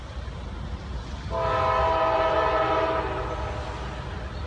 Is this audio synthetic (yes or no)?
no